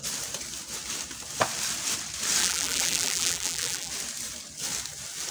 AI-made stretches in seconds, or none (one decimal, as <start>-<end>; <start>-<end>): 2.4-3.9